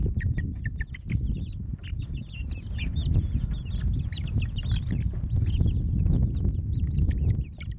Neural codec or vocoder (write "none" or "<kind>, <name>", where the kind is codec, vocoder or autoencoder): none